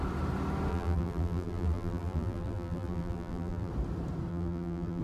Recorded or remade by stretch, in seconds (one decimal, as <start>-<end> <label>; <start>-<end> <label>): 0.0-0.7 recorded; 0.7-3.7 remade; 3.7-4.3 recorded; 4.3-5.0 remade